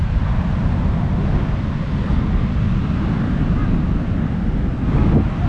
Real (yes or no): yes